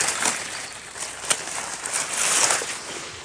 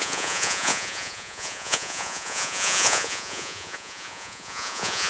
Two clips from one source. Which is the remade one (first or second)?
second